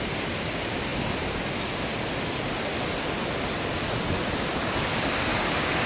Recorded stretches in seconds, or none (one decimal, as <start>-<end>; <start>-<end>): 0.0-5.3